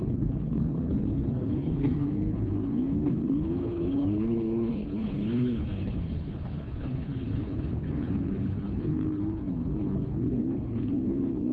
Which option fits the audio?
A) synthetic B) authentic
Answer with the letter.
A